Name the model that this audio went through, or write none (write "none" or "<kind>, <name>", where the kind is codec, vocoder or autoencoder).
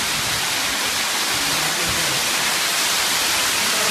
none